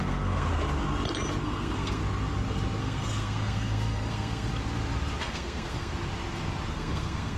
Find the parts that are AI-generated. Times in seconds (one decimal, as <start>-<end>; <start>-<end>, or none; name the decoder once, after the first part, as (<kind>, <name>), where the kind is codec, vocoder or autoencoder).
0.0-0.5 (codec, SNAC); 1.4-2.0; 2.8-4.5; 5.2-5.9; 6.7-7.4